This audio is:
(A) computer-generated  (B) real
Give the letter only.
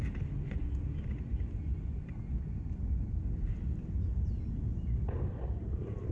B